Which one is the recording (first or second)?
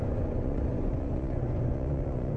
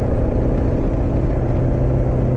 second